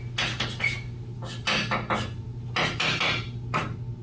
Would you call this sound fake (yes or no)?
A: no